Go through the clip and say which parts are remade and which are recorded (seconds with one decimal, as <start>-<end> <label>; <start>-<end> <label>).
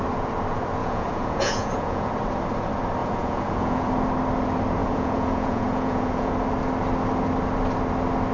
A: 0.0-0.8 recorded; 0.8-2.1 remade; 2.1-3.0 recorded; 3.0-3.9 remade; 3.9-4.8 recorded; 4.8-6.3 remade; 6.3-8.3 recorded